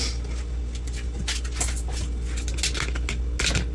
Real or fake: real